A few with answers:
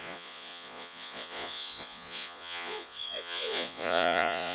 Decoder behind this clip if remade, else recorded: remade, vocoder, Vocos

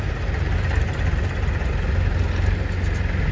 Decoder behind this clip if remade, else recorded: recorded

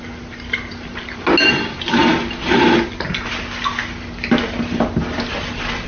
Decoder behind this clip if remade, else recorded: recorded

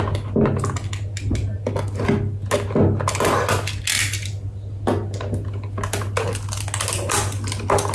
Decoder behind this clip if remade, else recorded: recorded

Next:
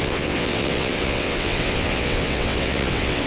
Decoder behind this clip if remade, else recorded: remade, vocoder, WaveNeXt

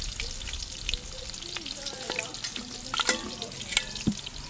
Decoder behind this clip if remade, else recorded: recorded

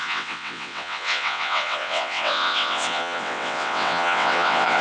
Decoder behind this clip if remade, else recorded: remade, vocoder, WaveNeXt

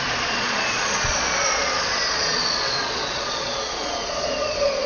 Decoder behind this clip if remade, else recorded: remade, vocoder, Vocos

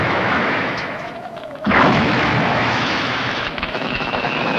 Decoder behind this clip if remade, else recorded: remade, autoencoder, DAC-VAE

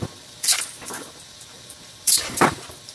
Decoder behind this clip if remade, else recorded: remade, vocoder, BigVGAN v2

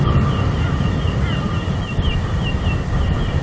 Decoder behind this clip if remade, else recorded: recorded